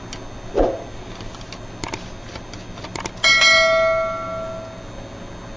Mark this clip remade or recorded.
recorded